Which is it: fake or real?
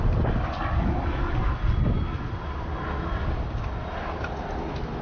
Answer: real